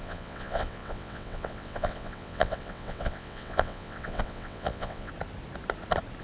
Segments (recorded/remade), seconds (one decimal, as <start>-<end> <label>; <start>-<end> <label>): 0.0-5.1 remade; 5.1-6.2 recorded